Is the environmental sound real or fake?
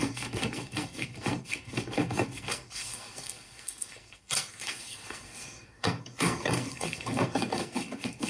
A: fake